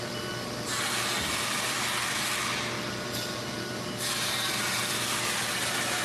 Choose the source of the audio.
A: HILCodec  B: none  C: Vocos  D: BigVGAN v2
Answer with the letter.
B